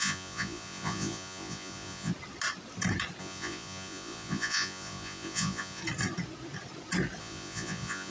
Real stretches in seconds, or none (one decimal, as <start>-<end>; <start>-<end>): 2.1-3.2; 5.8-7.2